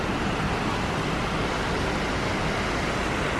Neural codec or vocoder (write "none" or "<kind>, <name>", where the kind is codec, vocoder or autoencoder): none